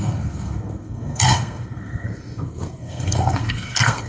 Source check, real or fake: fake